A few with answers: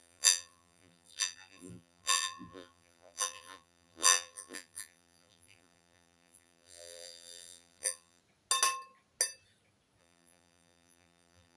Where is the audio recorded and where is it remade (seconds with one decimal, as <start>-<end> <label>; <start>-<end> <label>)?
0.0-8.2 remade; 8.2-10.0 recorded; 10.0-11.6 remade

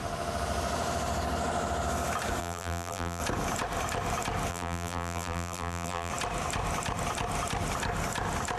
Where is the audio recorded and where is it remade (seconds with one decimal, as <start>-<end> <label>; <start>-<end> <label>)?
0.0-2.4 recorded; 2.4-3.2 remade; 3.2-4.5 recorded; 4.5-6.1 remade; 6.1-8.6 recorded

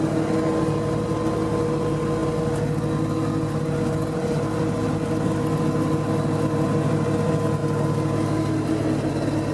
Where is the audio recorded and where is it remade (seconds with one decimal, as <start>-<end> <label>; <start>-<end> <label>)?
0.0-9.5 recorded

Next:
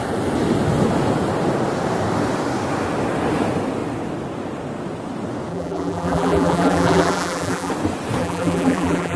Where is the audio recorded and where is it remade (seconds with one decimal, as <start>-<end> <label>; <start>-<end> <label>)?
0.0-5.5 recorded; 5.5-7.7 remade; 7.7-8.2 recorded; 8.2-9.2 remade

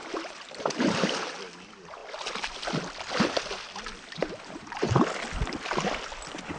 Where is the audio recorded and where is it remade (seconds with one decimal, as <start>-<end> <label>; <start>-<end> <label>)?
0.0-1.2 remade; 1.2-4.2 recorded; 4.2-4.9 remade; 4.9-6.6 recorded

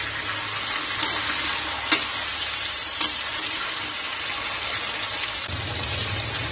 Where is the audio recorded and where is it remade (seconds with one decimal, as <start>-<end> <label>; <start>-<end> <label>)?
0.0-2.3 recorded; 2.3-3.9 remade; 3.9-5.4 recorded; 5.4-6.5 remade

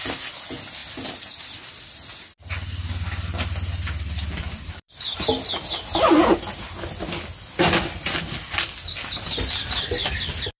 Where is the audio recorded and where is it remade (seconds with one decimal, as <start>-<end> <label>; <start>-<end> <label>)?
0.0-10.6 recorded

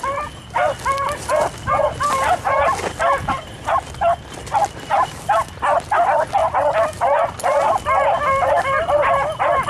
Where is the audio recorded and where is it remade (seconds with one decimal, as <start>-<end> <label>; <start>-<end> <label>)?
0.0-2.6 recorded; 2.6-3.7 remade; 3.7-9.7 recorded